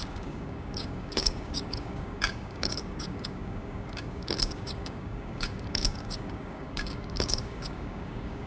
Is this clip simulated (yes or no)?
yes